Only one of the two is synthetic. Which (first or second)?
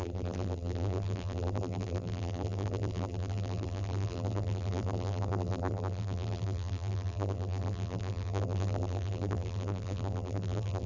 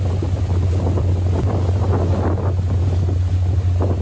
first